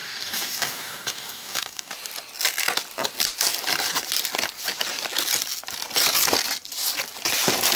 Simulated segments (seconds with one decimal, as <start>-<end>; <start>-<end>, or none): 0.0-1.9